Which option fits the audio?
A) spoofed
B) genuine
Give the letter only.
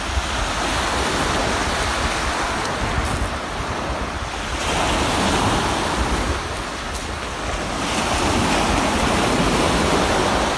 B